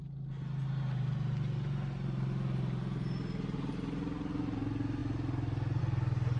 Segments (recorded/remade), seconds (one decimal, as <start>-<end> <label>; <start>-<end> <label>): 0.0-6.4 recorded